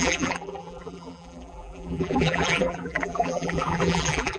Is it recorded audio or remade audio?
remade